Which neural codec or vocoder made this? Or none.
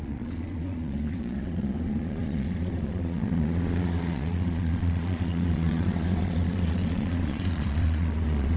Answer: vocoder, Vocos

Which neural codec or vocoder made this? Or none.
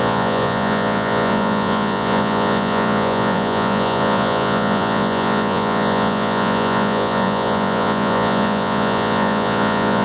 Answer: vocoder, Vocos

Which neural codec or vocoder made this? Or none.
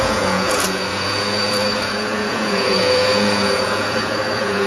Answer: vocoder, Vocos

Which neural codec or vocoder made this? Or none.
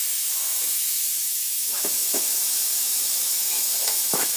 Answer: autoencoder, DAC-VAE